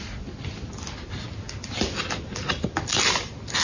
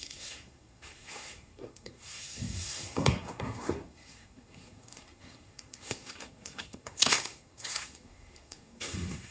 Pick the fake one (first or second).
second